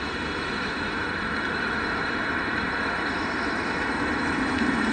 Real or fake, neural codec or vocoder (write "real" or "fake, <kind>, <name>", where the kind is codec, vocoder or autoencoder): fake, autoencoder, DAC-VAE